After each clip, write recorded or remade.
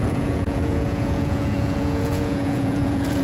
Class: remade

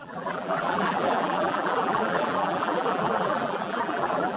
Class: remade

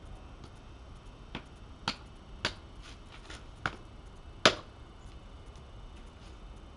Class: recorded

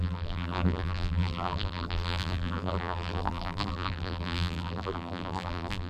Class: remade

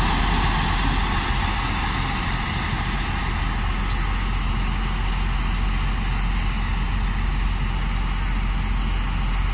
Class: recorded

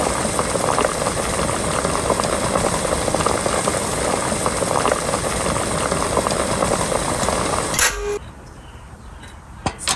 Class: recorded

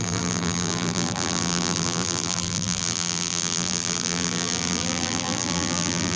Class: remade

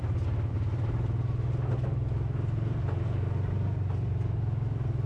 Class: recorded